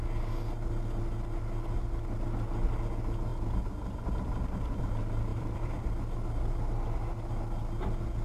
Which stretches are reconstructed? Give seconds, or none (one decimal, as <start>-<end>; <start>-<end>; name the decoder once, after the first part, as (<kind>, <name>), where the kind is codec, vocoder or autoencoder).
5.3-5.9 (vocoder, BigVGAN v2)